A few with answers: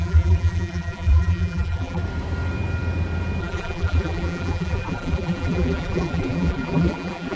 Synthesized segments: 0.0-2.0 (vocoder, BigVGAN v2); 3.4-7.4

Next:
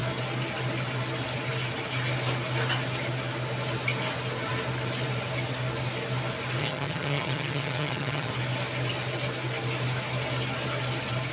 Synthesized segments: 6.6-8.3 (vocoder, HiFi-GAN)

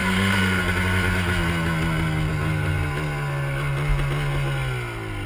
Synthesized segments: 0.0-0.6 (codec, SNAC)

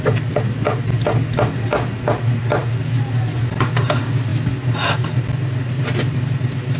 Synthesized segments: none

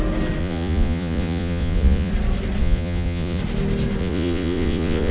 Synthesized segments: 0.4-2.1 (vocoder, Vocos); 2.6-3.4; 4.0-5.1

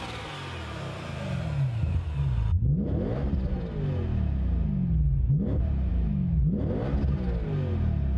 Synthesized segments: 5.9-6.6 (autoencoder, DAC-VAE)

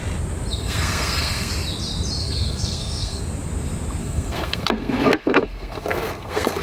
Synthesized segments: 0.5-1.5 (codec, SNAC); 2.2-3.2; 4.0-6.6

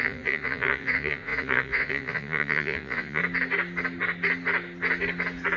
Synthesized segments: 0.0-3.2 (vocoder, Vocos)